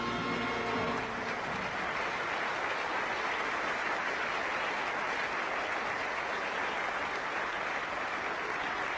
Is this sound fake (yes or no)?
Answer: no